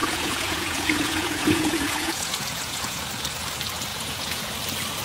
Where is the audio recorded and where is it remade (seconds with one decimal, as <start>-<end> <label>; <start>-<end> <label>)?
0.0-3.0 remade; 3.0-3.9 recorded; 3.9-4.5 remade; 4.5-5.0 recorded